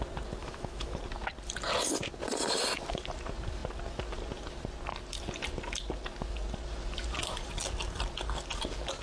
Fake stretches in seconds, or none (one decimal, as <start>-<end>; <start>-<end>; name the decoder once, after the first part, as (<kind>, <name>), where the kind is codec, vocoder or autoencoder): 0.4-1.0 (autoencoder, DAC-VAE)